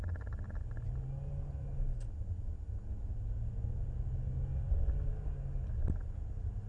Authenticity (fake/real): real